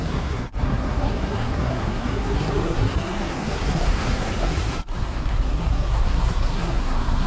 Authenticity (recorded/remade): remade